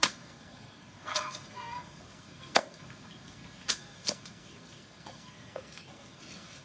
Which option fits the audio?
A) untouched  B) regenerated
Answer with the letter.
B